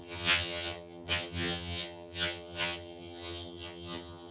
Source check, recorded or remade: remade